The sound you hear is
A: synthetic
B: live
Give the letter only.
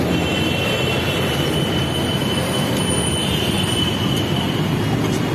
B